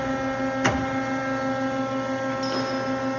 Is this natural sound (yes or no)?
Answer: yes